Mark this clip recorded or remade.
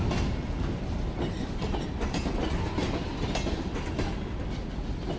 recorded